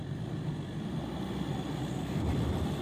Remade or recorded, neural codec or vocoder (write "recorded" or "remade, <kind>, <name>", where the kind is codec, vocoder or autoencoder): recorded